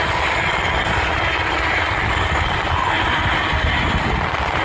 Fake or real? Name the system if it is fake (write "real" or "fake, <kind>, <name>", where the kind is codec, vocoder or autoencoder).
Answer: real